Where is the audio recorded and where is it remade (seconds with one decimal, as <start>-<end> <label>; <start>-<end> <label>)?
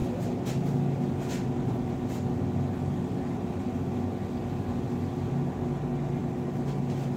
0.0-7.2 recorded